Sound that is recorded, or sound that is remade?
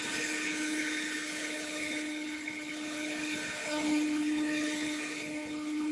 remade